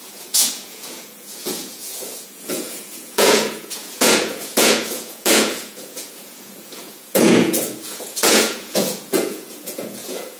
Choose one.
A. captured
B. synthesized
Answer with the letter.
B